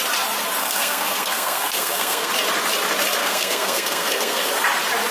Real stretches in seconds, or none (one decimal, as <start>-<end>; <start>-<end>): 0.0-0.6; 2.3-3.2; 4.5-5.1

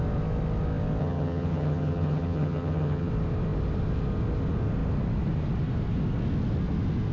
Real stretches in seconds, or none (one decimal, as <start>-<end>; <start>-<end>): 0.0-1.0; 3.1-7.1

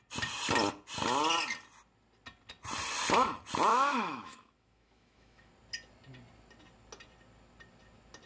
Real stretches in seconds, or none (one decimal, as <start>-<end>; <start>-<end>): 0.0-3.7; 5.5-8.3